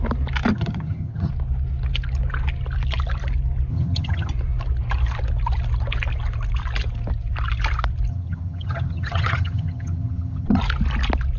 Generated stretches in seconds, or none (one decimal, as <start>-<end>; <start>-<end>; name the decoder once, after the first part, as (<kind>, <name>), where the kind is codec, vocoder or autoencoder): 0.5-1.3 (vocoder, HiFi-GAN); 3.7-4.3; 8.1-10.6